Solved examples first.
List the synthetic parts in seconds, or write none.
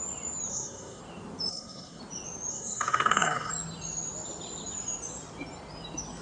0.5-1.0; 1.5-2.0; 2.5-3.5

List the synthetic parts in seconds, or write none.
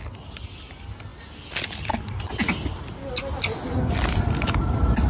none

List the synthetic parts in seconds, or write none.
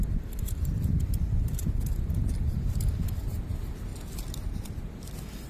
1.6-3.3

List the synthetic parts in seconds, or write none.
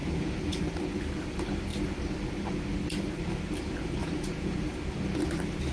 0.0-0.6; 4.0-4.7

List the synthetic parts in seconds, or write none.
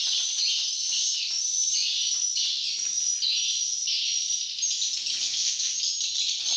5.2-5.7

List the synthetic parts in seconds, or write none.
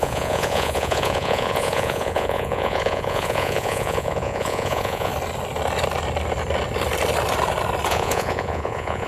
0.0-5.1; 7.9-9.1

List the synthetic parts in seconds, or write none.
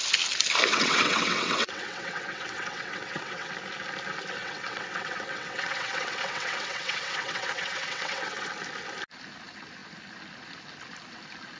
0.7-3.5; 4.4-8.5